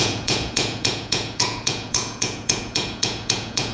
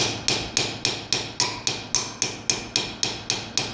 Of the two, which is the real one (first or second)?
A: second